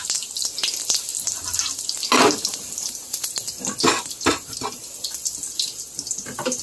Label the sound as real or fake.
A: real